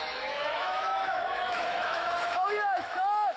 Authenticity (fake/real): fake